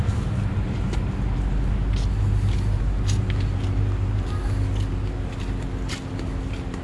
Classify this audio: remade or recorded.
recorded